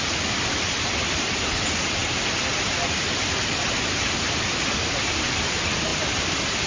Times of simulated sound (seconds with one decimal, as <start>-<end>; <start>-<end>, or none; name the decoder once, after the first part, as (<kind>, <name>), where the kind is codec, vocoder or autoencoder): 5.9-6.7 (vocoder, BigVGAN v2)